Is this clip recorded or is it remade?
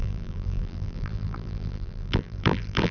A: remade